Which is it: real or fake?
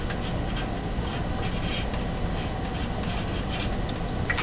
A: real